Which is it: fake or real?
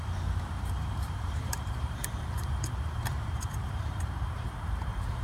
fake